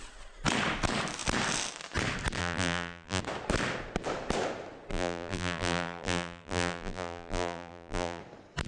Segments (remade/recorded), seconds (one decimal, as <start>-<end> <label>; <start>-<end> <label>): 0.0-2.4 recorded; 2.4-3.2 remade; 3.2-4.9 recorded; 4.9-8.2 remade; 8.2-8.7 recorded